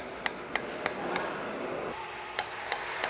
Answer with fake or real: real